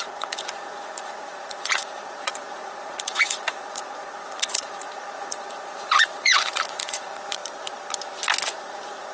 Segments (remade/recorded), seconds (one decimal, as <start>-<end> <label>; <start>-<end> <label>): 0.0-7.4 remade; 7.4-8.5 recorded; 8.5-9.1 remade